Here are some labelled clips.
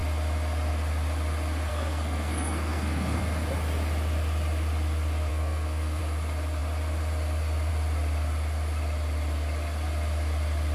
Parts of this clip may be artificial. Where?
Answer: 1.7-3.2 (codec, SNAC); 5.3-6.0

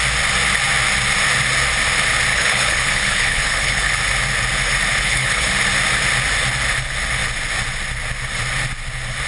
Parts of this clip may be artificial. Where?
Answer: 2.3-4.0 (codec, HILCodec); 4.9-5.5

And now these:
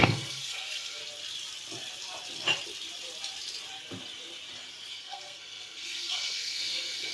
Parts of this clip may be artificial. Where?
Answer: 0.0-1.0 (codec, SNAC); 4.9-7.1